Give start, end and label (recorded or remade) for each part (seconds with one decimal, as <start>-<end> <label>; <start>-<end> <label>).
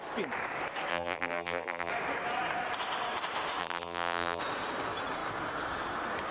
0.0-0.9 recorded; 0.9-1.9 remade; 1.9-3.6 recorded; 3.6-4.4 remade; 4.4-6.3 recorded